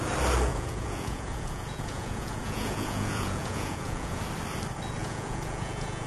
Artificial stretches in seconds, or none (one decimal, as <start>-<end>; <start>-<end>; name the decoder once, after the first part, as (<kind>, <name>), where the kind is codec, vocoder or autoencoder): 0.5-4.2 (vocoder, Vocos); 5.0-6.1